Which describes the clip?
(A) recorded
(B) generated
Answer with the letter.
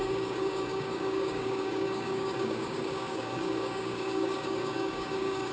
B